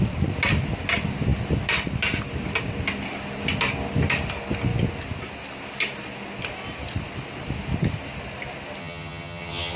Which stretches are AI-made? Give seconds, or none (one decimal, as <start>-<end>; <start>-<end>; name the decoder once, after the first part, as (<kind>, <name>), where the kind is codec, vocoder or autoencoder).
8.8-9.8 (vocoder, HiFi-GAN)